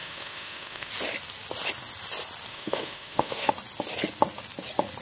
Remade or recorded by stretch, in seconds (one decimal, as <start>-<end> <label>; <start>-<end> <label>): 0.0-0.9 remade; 0.9-2.5 recorded; 2.5-3.5 remade; 3.5-5.0 recorded